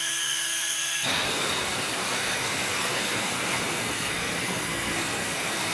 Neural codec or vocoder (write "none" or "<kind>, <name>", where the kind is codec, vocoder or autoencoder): codec, SNAC